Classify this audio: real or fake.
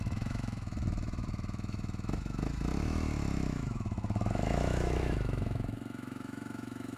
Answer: fake